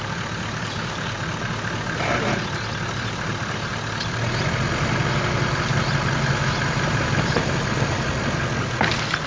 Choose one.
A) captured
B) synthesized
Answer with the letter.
A